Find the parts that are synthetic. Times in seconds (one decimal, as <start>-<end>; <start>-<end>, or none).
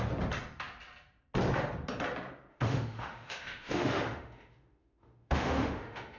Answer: 2.5-6.2